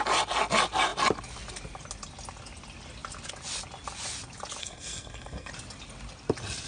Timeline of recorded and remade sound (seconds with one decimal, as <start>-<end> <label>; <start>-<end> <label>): 0.0-4.6 recorded; 4.6-5.5 remade; 5.5-6.7 recorded